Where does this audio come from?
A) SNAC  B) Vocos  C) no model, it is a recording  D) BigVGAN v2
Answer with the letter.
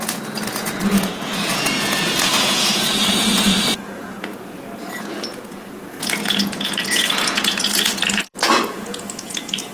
B